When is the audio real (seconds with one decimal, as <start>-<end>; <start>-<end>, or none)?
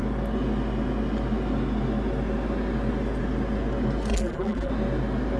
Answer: 0.0-4.1; 4.7-5.4